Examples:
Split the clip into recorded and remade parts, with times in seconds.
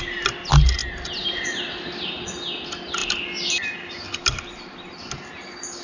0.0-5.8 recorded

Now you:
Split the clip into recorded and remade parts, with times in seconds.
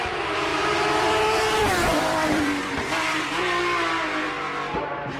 0.0-0.5 recorded; 0.5-3.6 remade; 3.6-5.2 recorded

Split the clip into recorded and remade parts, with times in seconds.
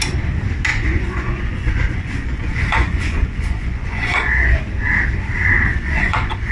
0.0-0.7 recorded; 0.7-4.6 remade; 4.6-5.7 recorded; 5.7-6.5 remade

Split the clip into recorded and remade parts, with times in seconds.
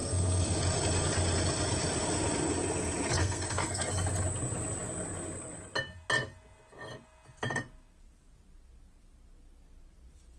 0.0-0.6 remade; 0.6-3.2 recorded; 3.2-3.9 remade; 3.9-10.4 recorded